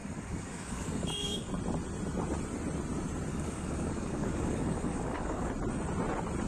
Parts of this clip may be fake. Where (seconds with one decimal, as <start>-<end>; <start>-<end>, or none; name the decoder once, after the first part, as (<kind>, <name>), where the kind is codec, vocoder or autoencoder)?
0.0-1.5 (codec, DAC); 3.3-5.5